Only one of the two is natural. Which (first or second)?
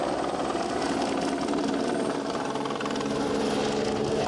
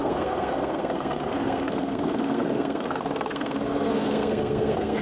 first